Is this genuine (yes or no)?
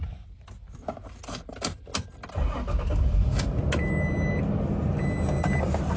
yes